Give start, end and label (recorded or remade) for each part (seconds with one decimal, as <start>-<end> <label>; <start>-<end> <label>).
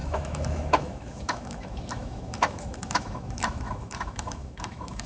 0.0-5.1 remade